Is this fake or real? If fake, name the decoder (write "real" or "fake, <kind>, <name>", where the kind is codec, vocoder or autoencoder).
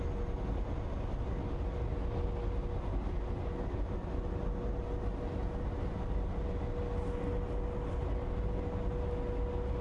real